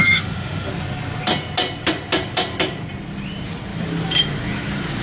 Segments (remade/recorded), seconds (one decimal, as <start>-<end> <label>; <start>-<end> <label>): 0.0-0.7 remade; 0.7-5.0 recorded